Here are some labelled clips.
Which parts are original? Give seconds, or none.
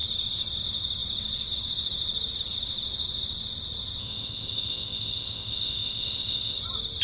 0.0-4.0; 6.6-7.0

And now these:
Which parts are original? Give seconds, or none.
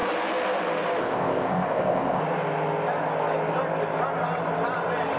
0.0-1.0; 2.2-5.2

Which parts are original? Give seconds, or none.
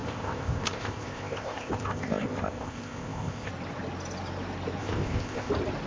3.5-4.8; 5.5-5.9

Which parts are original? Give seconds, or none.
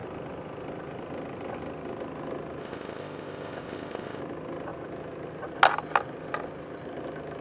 0.0-2.6; 4.2-7.4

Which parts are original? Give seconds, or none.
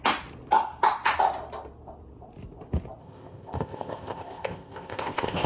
0.0-3.0